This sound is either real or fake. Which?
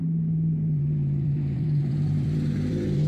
fake